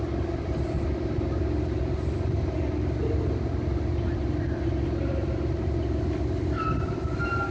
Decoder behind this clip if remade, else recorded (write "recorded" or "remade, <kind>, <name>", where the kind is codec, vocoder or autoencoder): recorded